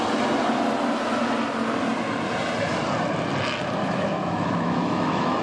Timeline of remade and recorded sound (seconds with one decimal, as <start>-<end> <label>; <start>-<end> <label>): 0.0-3.8 recorded; 3.8-5.4 remade

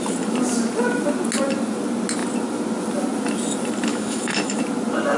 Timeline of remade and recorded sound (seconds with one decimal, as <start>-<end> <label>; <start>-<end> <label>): 0.0-3.9 recorded; 3.9-4.6 remade; 4.6-5.2 recorded

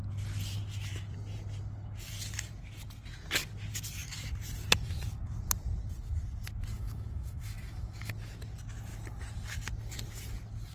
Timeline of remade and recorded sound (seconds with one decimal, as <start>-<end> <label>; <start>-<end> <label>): 0.0-6.7 recorded; 6.7-8.1 remade; 8.1-10.7 recorded

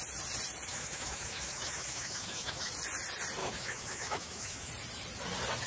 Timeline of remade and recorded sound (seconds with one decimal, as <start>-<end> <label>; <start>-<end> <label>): 0.0-0.7 recorded; 0.7-2.7 remade; 2.7-3.4 recorded; 3.4-4.7 remade; 4.7-5.7 recorded

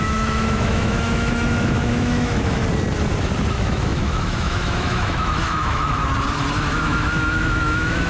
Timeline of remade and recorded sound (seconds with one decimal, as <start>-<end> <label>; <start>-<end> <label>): 0.0-2.6 remade; 2.6-3.5 recorded; 3.5-6.0 remade; 6.0-6.6 recorded; 6.6-8.1 remade

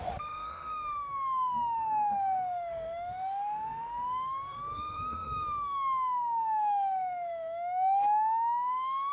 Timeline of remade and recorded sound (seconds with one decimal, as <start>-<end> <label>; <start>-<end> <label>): 0.0-9.1 remade

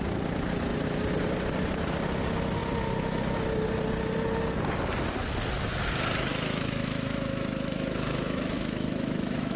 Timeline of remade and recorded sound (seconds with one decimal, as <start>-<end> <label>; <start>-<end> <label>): 0.0-6.3 recorded; 6.3-9.6 remade